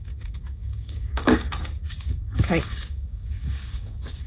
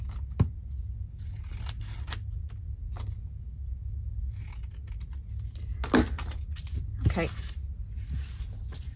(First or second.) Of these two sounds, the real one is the second